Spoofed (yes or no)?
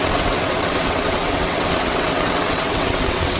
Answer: yes